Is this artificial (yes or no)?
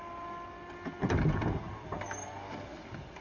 no